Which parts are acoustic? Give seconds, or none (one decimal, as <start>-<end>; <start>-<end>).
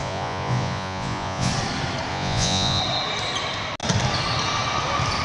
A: 1.5-2.1; 2.8-5.2